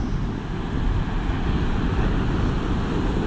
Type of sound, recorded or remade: recorded